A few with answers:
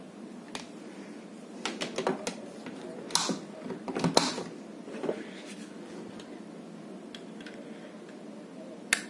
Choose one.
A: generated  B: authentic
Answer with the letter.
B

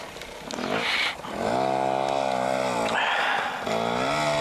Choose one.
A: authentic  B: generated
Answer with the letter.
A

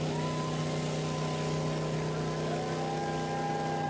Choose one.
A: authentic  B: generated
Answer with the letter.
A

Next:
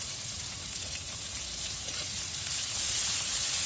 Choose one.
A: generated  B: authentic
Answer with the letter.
A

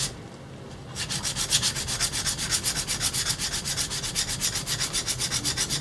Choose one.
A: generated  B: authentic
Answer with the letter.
B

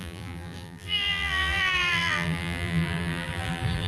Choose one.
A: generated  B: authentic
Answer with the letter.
A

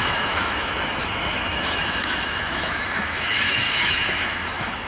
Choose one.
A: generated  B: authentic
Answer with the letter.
A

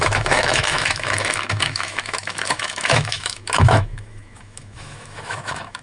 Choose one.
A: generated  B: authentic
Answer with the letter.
A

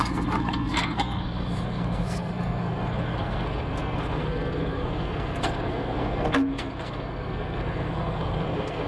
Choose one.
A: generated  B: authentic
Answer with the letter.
A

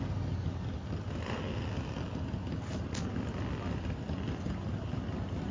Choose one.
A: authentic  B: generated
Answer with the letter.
A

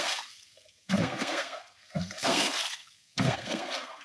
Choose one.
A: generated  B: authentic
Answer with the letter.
A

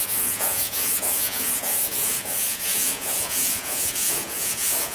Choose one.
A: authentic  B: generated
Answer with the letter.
B